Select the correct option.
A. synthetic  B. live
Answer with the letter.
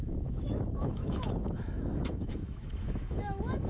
A